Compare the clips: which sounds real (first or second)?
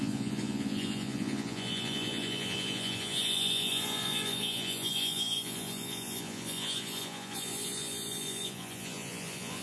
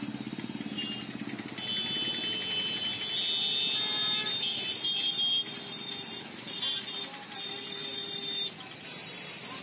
second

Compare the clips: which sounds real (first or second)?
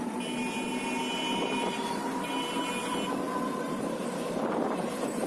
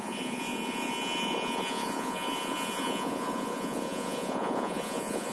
first